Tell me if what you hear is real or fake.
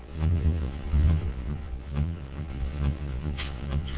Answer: fake